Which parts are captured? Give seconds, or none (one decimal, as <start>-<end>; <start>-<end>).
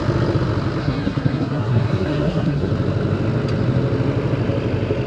0.0-0.8; 2.7-5.1